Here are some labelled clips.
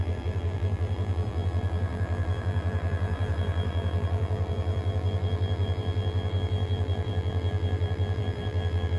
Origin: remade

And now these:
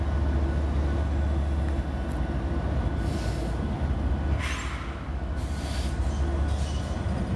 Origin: recorded